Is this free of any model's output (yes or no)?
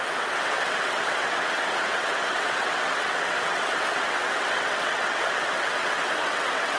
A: no